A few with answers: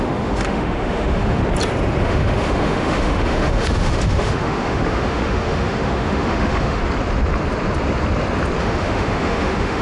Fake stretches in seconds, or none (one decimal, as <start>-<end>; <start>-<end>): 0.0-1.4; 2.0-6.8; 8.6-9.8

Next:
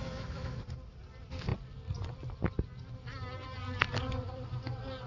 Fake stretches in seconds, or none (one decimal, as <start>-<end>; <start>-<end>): 0.0-0.6

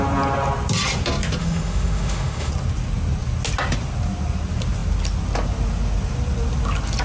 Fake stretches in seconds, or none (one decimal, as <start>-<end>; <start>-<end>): 1.4-2.5

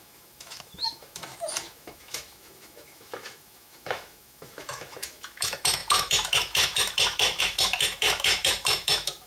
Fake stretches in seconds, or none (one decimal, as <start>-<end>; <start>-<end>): 0.0-9.3

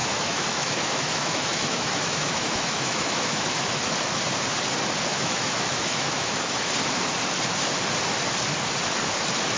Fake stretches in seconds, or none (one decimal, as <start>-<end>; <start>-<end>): 0.0-3.8; 5.1-6.7